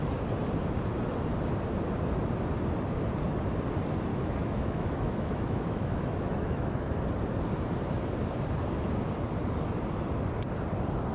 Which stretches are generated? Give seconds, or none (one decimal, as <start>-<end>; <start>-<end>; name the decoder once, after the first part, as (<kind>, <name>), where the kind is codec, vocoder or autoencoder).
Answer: 4.1-6.9 (autoencoder, DAC-VAE)

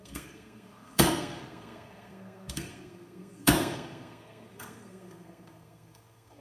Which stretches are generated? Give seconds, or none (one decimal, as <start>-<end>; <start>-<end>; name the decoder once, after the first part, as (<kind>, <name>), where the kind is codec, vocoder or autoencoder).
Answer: 0.0-6.4 (codec, SNAC)